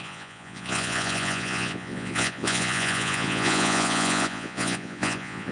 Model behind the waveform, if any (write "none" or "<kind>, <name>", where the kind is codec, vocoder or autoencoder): vocoder, Vocos